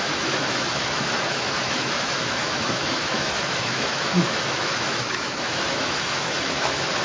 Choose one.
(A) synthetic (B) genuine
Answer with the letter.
A